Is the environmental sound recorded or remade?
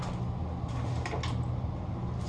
recorded